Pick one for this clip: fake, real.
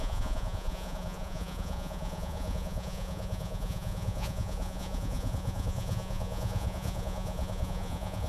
fake